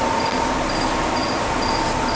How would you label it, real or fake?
real